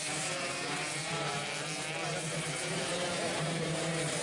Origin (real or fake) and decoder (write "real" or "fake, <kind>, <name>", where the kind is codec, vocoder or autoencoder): fake, vocoder, BigVGAN v2